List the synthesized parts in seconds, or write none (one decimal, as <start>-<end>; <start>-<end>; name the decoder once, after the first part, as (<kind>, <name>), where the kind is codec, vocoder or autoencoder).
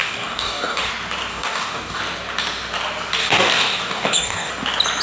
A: 0.0-0.9 (codec, DAC); 1.3-2.0; 3.2-4.5